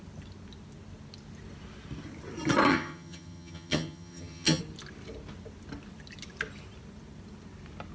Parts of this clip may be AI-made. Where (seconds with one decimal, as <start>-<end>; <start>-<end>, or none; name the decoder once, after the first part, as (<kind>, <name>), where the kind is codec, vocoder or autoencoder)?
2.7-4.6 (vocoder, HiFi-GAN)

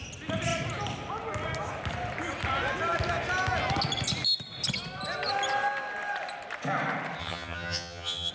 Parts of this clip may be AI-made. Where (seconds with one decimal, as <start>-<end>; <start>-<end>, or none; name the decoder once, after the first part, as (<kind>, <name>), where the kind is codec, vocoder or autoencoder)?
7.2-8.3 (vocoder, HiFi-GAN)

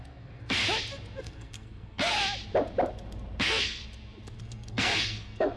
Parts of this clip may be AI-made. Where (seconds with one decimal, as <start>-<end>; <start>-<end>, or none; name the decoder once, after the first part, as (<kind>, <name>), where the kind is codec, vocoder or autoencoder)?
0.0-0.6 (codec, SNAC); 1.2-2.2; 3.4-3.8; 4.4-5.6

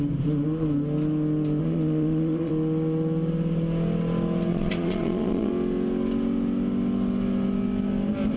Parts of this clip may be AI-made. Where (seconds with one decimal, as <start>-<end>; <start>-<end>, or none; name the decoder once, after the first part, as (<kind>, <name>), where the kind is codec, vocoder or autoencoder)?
1.6-2.5 (vocoder, Vocos); 4.5-5.5

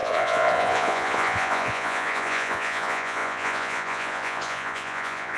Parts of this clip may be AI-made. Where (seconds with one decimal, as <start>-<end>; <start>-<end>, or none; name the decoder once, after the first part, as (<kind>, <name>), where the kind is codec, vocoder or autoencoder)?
0.0-5.4 (vocoder, Vocos)